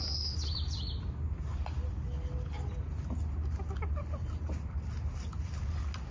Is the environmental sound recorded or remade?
recorded